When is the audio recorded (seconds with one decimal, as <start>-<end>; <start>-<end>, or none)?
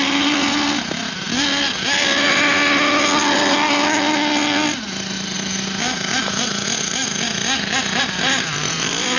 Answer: 1.0-5.8; 7.0-8.0